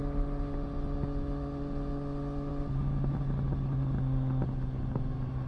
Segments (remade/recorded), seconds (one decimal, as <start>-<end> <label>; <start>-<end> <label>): 0.0-5.5 recorded